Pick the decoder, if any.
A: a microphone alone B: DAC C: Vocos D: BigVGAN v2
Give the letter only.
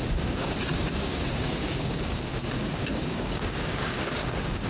B